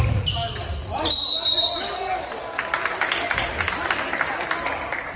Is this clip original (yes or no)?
yes